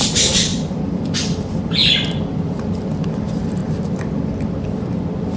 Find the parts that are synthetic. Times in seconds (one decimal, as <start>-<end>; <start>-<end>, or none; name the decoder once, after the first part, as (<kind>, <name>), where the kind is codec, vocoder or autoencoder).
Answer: 0.0-3.6 (vocoder, BigVGAN v2)